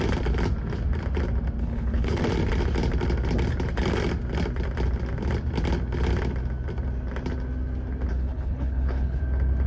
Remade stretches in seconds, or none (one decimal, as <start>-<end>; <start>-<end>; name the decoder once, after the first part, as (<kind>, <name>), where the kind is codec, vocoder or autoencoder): 1.6-2.2 (codec, HILCodec); 8.1-9.2